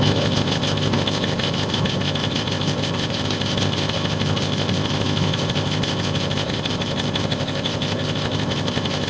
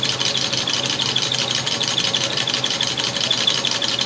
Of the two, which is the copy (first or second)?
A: first